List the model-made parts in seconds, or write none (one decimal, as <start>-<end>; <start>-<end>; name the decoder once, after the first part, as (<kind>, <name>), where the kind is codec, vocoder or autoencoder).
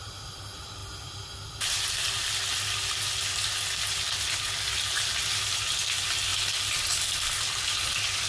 none